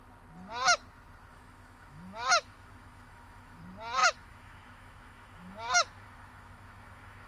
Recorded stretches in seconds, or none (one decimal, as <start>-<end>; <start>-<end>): 0.0-1.3; 3.6-4.0